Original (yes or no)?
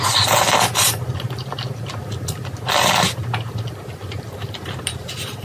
yes